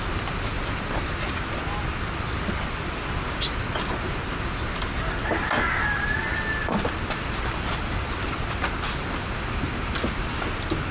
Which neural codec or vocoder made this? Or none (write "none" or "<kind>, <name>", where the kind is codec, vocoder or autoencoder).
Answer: none